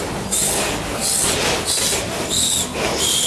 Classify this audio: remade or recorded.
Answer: recorded